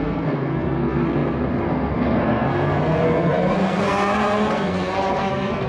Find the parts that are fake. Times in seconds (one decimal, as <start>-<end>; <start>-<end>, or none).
0.0-5.7